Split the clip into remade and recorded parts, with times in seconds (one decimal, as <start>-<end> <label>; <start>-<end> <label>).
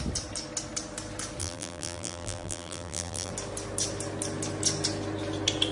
0.0-1.4 recorded; 1.4-3.3 remade; 3.3-5.7 recorded